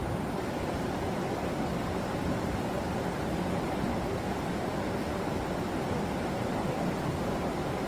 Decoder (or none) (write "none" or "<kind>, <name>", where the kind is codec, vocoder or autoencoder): none